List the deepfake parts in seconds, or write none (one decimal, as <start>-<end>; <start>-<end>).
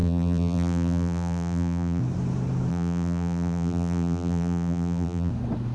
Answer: 0.0-2.0; 2.7-5.3